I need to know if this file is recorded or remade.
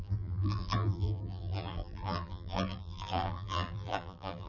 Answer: remade